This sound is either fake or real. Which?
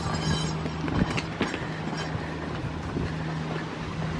real